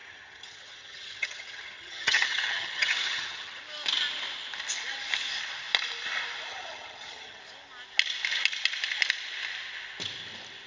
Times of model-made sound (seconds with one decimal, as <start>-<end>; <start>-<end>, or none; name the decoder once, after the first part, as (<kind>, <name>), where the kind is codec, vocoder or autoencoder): 0.0-3.6 (vocoder, HiFi-GAN); 6.5-7.4